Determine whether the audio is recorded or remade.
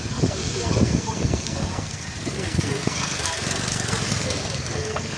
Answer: remade